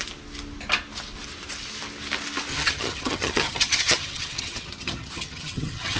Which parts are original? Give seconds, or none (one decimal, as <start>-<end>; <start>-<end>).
0.0-2.5